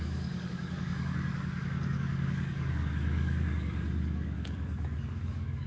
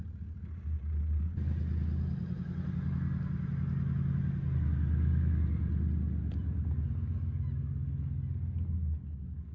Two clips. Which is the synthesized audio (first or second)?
first